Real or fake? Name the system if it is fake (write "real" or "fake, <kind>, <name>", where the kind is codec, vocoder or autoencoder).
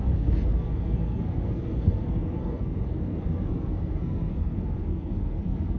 fake, codec, SNAC